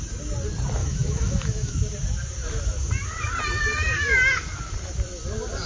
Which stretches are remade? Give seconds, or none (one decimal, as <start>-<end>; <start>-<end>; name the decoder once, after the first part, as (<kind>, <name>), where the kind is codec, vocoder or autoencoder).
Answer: 0.8-1.7 (autoencoder, DAC-VAE)